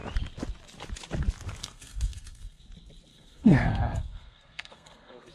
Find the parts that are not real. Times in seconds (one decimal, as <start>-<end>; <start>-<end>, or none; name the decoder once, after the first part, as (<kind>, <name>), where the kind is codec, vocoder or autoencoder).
1.6-2.6 (codec, SNAC); 3.1-5.3